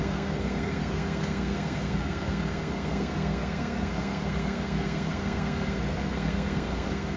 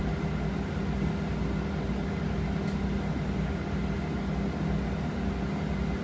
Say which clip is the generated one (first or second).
first